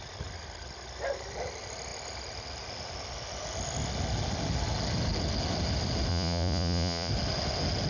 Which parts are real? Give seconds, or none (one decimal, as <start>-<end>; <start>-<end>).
0.0-6.1; 7.1-7.9